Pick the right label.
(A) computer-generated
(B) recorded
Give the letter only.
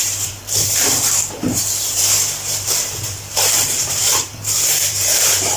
A